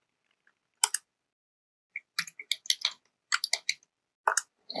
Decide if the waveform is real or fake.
real